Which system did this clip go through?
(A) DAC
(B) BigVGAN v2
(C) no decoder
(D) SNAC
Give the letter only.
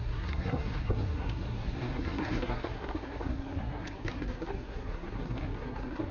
D